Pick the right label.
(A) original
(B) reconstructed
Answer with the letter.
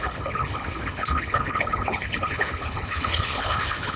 B